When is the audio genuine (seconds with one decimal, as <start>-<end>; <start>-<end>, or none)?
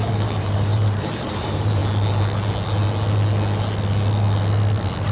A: 1.8-5.1